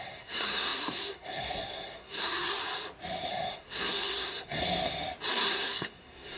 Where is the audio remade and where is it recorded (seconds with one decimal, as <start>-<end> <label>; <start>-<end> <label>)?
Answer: 0.0-2.6 remade; 2.6-3.3 recorded; 3.3-4.6 remade; 4.6-5.3 recorded; 5.3-6.4 remade